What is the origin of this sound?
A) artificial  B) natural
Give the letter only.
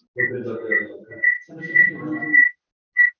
B